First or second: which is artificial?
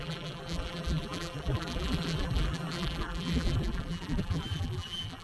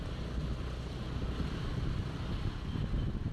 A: first